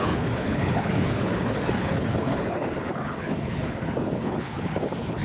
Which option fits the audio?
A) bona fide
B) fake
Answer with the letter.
B